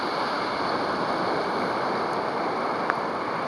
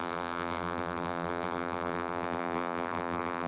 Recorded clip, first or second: first